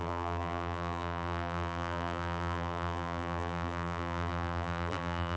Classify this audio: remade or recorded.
remade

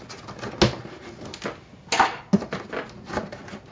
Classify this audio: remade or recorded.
recorded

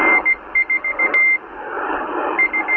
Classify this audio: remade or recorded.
recorded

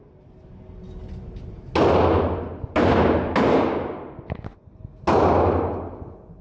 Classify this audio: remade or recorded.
recorded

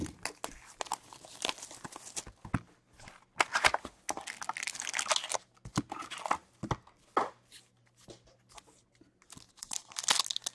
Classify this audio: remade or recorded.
recorded